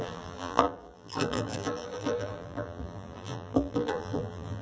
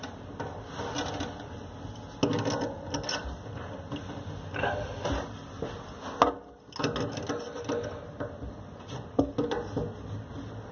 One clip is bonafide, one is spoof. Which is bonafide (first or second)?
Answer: second